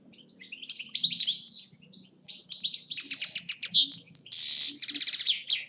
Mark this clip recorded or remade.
recorded